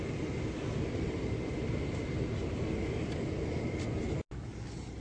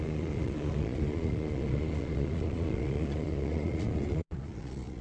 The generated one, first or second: second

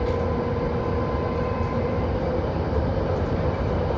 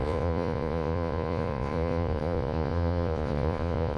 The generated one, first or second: second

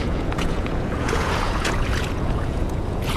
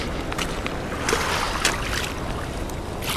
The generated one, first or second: first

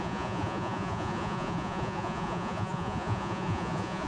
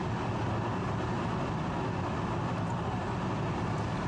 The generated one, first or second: first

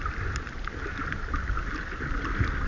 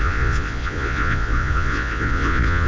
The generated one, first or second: second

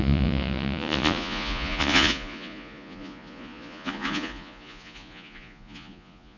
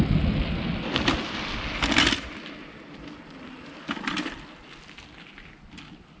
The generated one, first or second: first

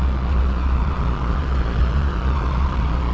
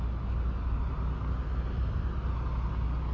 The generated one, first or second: first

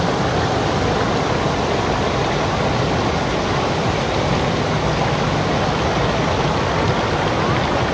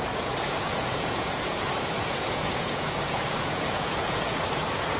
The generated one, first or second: second